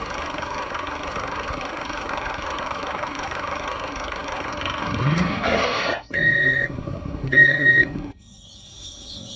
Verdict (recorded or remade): remade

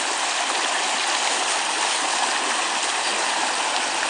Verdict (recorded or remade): recorded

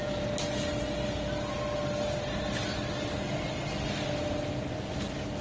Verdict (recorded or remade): recorded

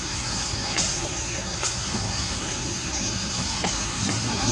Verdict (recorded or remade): remade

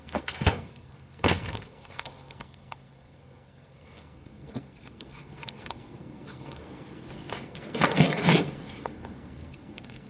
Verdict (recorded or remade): remade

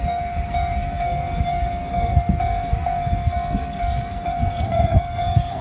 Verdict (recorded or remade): remade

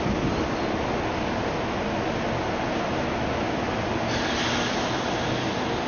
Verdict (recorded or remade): recorded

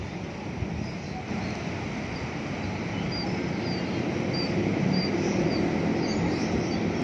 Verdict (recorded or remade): recorded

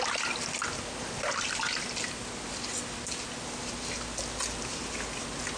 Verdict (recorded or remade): recorded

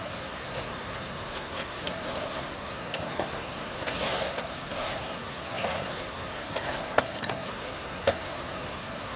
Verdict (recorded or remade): remade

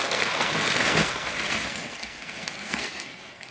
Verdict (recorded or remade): remade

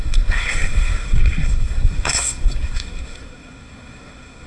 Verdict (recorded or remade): remade